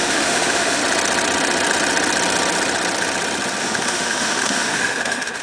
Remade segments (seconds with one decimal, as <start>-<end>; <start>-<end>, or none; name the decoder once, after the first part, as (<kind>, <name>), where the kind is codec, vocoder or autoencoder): 0.0-0.8 (autoencoder, DAC-VAE); 3.6-5.4